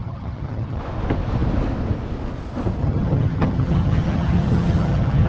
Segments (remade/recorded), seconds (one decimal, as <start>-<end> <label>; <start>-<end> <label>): 0.0-0.8 remade; 0.8-2.8 recorded; 2.8-5.3 remade